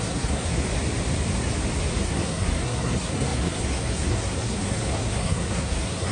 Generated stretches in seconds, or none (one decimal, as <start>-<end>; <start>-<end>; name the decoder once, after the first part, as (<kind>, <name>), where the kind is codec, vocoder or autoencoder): 0.0-0.6 (codec, SNAC); 2.0-6.1